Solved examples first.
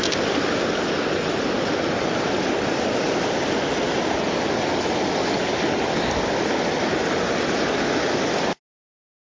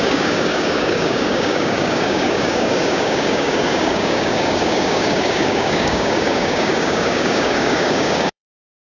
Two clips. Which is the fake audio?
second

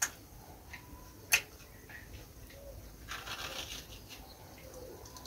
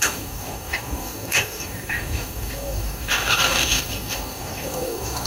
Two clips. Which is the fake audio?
second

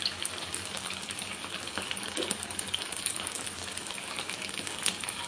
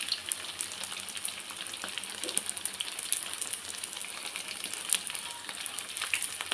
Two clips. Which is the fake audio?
first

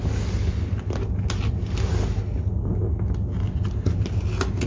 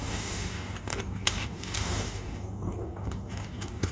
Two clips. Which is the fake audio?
second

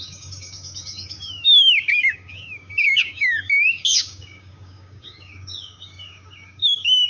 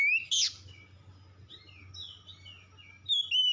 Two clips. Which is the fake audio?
first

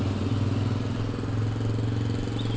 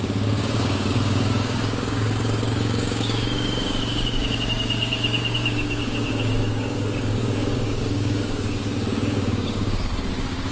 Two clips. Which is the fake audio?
second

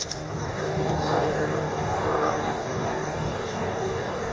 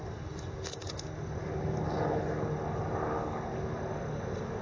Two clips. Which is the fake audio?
first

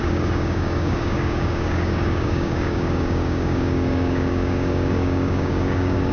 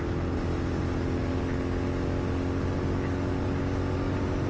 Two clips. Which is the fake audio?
first